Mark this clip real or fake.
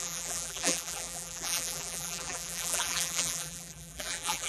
fake